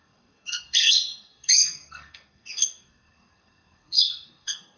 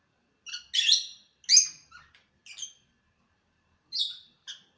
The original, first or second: second